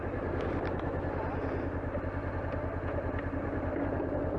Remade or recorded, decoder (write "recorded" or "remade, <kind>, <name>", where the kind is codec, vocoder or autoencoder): recorded